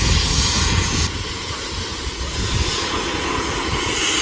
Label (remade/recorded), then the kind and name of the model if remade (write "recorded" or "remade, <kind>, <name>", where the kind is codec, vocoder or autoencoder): remade, vocoder, Vocos